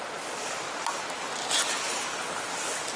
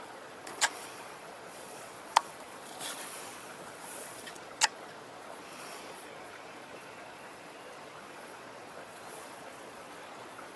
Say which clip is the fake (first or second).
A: second